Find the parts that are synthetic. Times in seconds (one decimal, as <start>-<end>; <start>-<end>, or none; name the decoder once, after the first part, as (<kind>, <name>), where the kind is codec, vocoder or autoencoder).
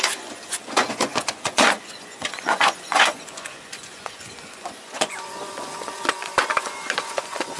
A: 0.0-7.6 (vocoder, Vocos)